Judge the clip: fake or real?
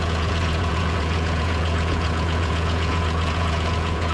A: fake